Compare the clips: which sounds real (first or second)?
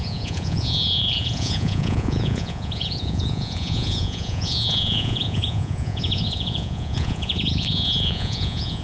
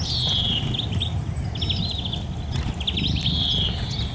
second